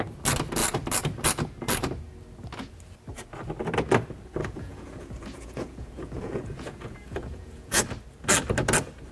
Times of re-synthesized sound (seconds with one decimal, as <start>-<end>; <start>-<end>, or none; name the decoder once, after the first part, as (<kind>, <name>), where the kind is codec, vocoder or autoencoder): 4.4-7.8 (vocoder, Vocos)

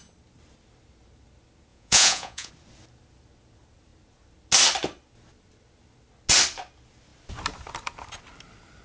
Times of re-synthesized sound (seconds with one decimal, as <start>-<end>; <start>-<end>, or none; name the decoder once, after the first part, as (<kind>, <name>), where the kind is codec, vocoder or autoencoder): 1.7-2.5 (vocoder, Vocos)

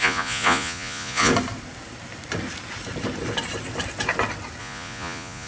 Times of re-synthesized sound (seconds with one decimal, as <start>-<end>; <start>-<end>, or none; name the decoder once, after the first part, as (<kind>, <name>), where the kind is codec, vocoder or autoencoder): 0.0-1.3 (vocoder, Vocos); 4.6-5.5

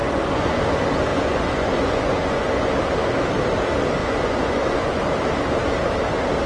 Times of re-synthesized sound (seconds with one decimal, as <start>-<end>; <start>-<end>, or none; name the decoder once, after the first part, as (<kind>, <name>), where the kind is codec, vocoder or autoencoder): 0.0-0.6 (vocoder, Vocos); 1.1-2.7; 4.0-5.0